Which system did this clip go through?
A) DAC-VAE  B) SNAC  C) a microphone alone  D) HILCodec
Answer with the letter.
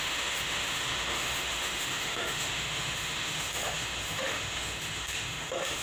A